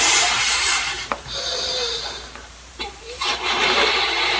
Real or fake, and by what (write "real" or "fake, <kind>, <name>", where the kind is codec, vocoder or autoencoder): fake, vocoder, BigVGAN v2